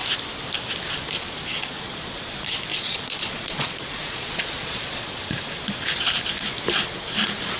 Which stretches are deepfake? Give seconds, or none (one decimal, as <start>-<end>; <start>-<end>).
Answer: 1.6-2.2; 2.7-5.2